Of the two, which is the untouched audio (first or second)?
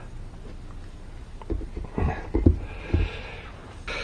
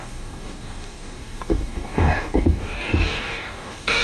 first